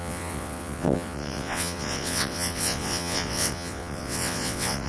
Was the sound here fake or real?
fake